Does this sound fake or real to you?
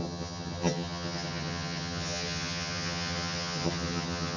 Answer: fake